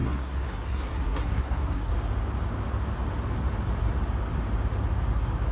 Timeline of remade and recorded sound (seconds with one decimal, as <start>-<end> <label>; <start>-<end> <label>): 0.0-1.9 remade; 1.9-5.5 recorded